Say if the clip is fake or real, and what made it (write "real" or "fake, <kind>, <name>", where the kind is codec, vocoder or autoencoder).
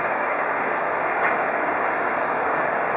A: fake, codec, DAC